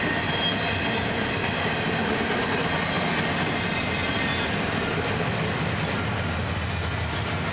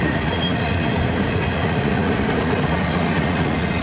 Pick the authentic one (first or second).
first